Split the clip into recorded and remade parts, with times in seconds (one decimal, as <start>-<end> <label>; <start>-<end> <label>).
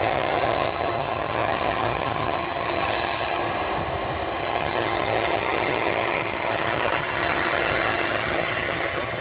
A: 0.0-3.4 remade; 3.4-4.4 recorded; 4.4-9.2 remade